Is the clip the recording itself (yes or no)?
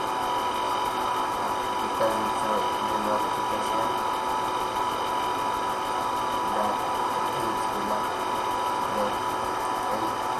yes